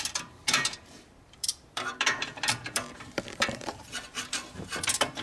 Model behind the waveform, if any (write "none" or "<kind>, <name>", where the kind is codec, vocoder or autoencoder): vocoder, BigVGAN v2